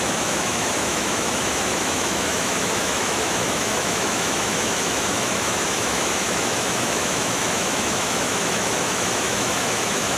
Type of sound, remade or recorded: remade